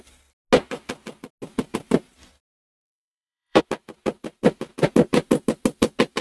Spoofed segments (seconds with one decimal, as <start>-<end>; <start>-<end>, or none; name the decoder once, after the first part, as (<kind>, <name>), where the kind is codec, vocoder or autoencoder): 2.8-3.6 (autoencoder, DAC-VAE)